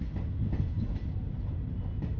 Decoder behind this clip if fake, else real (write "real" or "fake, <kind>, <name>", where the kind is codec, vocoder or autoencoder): real